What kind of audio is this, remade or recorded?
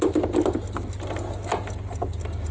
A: recorded